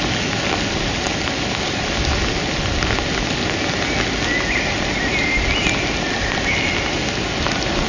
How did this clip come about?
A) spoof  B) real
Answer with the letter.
B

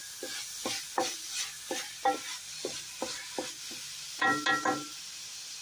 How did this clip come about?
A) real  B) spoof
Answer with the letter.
A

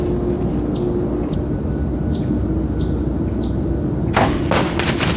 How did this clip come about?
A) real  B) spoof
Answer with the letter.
A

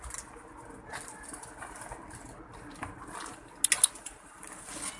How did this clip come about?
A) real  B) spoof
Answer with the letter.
A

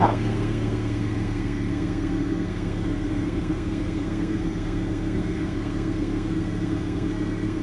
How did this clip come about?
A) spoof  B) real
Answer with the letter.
A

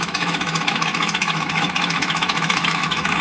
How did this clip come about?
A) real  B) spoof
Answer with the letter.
B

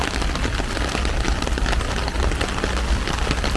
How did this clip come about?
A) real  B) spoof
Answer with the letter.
A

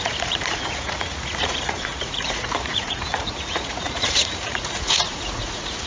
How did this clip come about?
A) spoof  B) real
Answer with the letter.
A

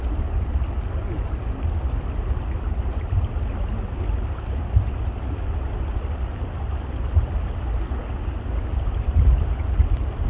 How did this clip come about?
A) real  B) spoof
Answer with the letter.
A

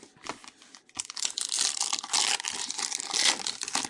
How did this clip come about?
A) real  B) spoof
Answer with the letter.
A